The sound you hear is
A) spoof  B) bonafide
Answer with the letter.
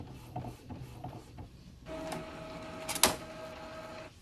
B